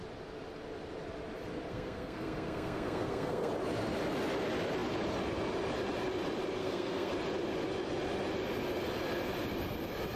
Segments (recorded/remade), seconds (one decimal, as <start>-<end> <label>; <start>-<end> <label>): 0.0-1.7 recorded; 1.7-3.5 remade; 3.5-6.6 recorded; 6.6-7.1 remade; 7.1-10.2 recorded